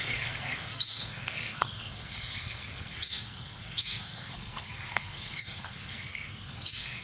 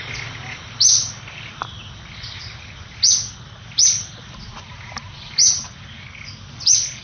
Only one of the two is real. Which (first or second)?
second